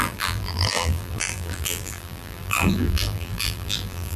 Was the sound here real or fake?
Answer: fake